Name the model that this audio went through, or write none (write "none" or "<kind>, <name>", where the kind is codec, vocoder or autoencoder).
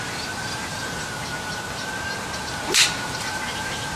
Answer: none